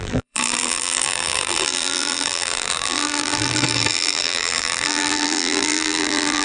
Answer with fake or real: fake